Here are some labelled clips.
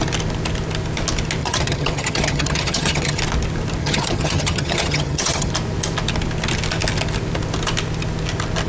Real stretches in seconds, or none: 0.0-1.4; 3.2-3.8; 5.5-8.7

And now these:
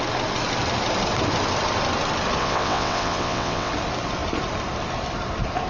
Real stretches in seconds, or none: 0.0-2.4; 3.7-5.7

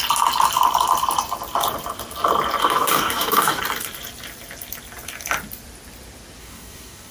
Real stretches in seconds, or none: 0.0-2.6; 3.6-6.4

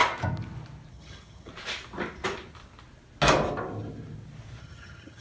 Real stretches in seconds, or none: 0.0-0.9; 1.5-4.6

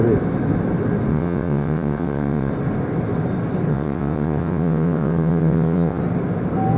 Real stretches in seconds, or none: 0.0-1.1; 2.5-3.7; 6.0-6.8

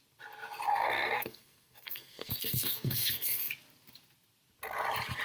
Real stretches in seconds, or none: 0.0-0.7; 3.5-5.2

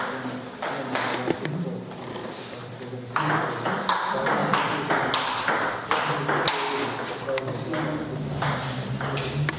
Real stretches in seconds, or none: 0.0-2.2; 2.9-9.6

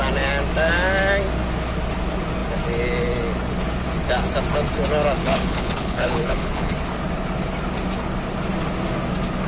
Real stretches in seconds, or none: 0.0-5.2; 6.7-9.5